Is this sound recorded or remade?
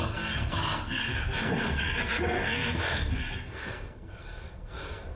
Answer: remade